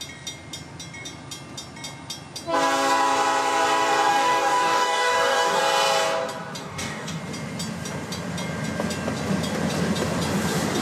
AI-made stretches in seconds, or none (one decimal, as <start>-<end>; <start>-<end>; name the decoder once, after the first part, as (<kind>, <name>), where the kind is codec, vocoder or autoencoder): 4.1-5.6 (codec, DAC); 6.6-7.2